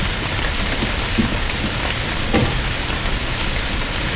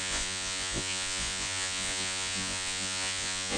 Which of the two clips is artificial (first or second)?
second